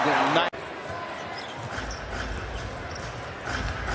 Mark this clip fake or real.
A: real